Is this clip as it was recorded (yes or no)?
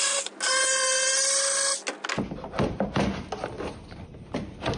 yes